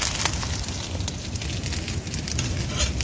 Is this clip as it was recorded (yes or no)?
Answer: yes